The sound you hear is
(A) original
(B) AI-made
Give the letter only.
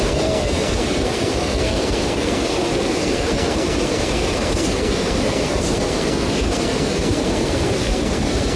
B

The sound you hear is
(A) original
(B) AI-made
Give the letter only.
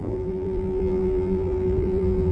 B